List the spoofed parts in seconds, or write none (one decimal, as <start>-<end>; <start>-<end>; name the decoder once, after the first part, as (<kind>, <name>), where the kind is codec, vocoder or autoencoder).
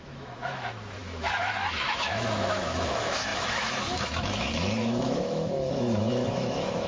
0.0-6.9 (autoencoder, DAC-VAE)